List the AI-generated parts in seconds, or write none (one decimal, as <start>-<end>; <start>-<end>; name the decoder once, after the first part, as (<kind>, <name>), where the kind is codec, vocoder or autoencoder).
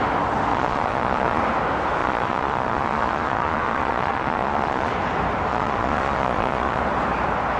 0.5-1.4 (vocoder, Vocos); 2.0-4.9; 5.5-6.8